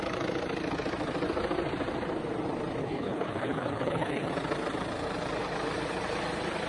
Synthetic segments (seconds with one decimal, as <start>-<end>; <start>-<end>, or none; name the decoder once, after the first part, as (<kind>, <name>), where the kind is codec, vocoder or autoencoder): 2.8-4.3 (codec, HILCodec)